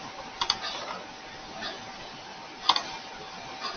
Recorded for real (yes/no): yes